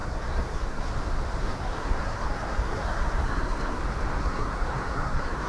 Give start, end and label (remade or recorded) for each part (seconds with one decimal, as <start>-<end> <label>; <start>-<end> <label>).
0.0-0.9 remade; 0.9-1.4 recorded; 1.4-3.8 remade; 3.8-4.2 recorded; 4.2-5.5 remade